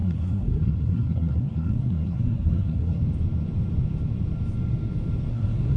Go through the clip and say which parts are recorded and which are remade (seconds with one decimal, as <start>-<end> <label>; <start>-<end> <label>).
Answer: 0.0-3.0 remade; 3.0-5.3 recorded; 5.3-5.8 remade

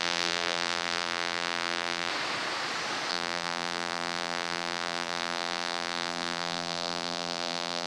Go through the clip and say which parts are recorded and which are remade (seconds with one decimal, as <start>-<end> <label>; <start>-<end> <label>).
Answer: 0.0-2.1 remade; 2.1-3.1 recorded; 3.1-7.9 remade